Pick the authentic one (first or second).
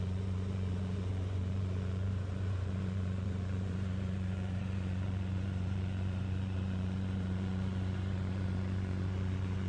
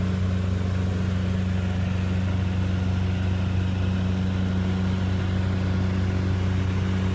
second